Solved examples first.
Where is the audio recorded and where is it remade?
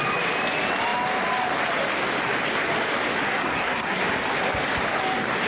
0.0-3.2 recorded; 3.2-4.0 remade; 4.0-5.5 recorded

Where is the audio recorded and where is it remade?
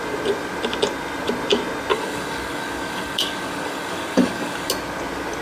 0.0-1.9 recorded; 1.9-4.7 remade; 4.7-5.4 recorded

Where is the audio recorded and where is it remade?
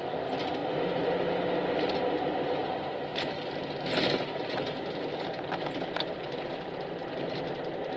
0.0-8.0 recorded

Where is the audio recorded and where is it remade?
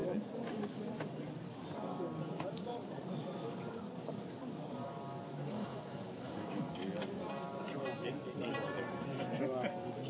0.0-5.4 recorded; 5.4-6.7 remade; 6.7-10.1 recorded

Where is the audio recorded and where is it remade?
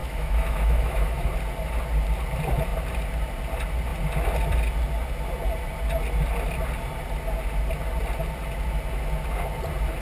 0.0-1.3 remade; 1.3-10.0 recorded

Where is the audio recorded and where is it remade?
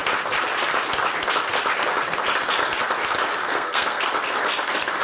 0.0-3.4 recorded; 3.4-4.1 remade; 4.1-5.0 recorded